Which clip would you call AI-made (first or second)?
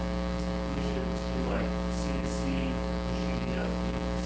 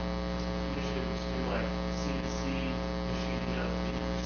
first